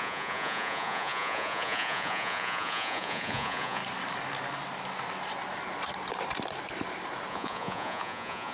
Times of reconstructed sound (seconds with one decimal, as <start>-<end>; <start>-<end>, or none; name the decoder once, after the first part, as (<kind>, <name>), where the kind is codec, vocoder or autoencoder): 0.0-3.8 (vocoder, Vocos); 7.3-8.5